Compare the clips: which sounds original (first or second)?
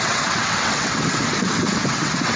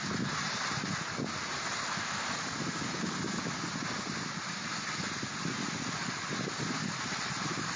second